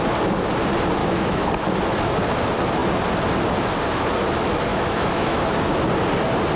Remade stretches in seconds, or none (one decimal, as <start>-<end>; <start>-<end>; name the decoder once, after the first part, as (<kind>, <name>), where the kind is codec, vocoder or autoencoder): 1.0-1.5 (autoencoder, DAC-VAE); 4.7-5.4